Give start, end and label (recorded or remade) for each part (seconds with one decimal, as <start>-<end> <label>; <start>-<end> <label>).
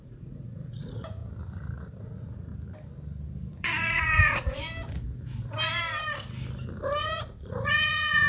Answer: 0.0-1.2 remade; 1.2-2.0 recorded; 2.0-2.5 remade; 2.5-3.5 recorded; 3.5-4.6 remade; 4.6-7.0 recorded; 7.0-8.3 remade